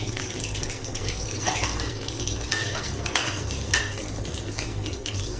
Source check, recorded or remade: remade